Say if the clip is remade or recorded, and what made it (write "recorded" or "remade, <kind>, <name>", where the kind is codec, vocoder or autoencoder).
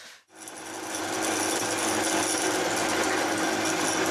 recorded